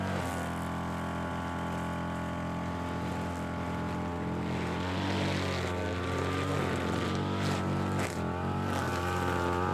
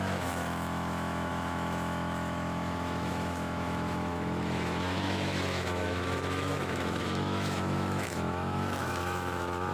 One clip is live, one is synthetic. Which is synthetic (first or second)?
second